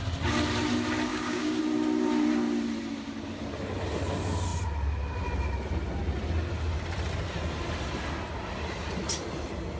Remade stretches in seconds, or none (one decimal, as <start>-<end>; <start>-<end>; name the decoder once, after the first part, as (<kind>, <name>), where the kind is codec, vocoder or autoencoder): 1.1-1.6 (codec, DAC)